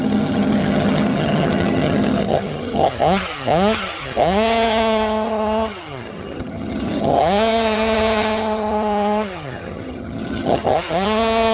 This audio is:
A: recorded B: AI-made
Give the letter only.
B